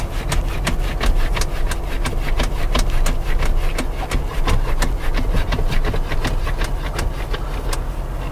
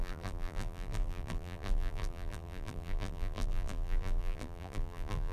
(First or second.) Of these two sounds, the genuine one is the first